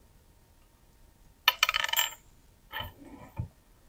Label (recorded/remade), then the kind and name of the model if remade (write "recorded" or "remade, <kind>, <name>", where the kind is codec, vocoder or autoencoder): recorded